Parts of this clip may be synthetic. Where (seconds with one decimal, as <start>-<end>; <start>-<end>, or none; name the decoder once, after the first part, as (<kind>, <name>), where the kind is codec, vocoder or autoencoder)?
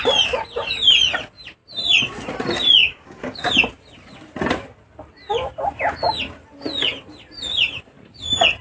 2.8-3.5 (codec, DAC)